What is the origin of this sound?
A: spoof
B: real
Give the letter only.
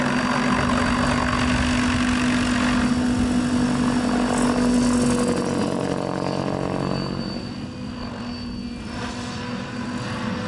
B